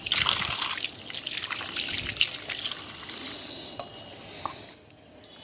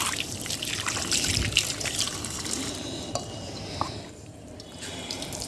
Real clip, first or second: first